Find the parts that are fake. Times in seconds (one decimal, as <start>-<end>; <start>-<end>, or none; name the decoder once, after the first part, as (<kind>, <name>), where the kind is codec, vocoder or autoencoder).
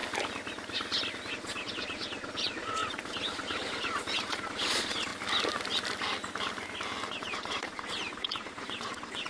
1.3-5.1 (vocoder, Vocos); 7.1-9.3